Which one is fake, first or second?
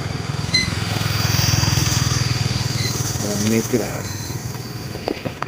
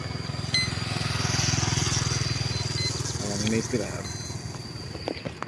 first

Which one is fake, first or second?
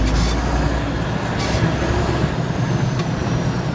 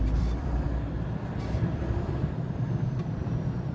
second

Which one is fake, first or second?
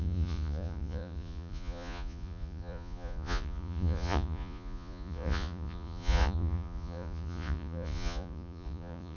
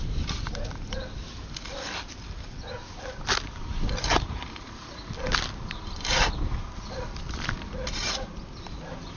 first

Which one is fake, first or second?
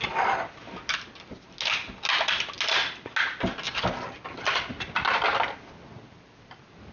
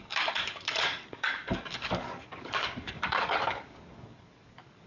second